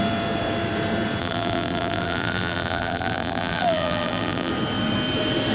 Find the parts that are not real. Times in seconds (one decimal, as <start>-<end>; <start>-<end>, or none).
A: 1.2-4.5